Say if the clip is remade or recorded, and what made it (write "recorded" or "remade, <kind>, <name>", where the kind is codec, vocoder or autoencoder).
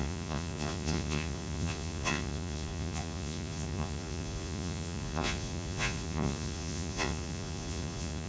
remade, vocoder, Vocos